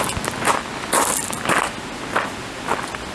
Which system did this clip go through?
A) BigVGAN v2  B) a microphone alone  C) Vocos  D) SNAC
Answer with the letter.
B